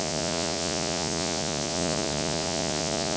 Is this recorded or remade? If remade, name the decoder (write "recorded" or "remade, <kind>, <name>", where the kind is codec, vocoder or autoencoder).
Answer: remade, vocoder, Vocos